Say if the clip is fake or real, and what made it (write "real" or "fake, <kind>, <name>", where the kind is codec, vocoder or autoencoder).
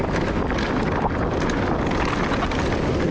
real